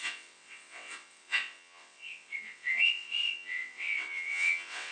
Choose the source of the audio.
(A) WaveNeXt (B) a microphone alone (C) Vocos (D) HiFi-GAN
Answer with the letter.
A